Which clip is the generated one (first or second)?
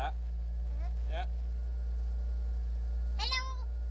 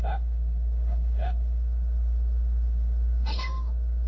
second